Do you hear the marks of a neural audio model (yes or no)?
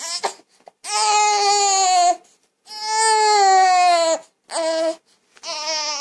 no